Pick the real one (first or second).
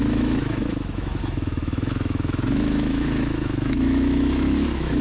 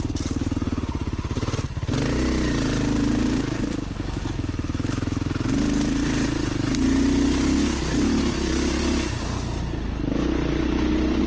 second